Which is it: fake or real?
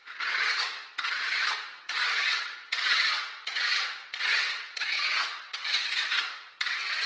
fake